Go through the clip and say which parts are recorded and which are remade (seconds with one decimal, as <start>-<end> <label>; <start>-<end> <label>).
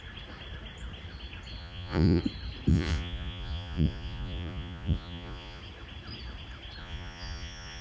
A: 0.0-1.6 recorded; 1.6-2.2 remade; 2.2-2.7 recorded; 2.7-5.6 remade; 5.6-6.8 recorded; 6.8-7.8 remade